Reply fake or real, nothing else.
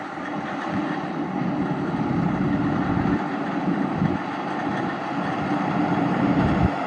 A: fake